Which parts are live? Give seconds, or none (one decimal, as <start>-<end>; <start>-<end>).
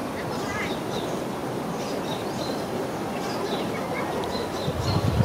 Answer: 0.0-1.4; 3.4-5.2